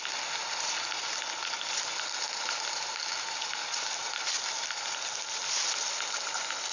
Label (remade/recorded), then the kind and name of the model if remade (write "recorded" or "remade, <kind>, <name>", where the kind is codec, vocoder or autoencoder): recorded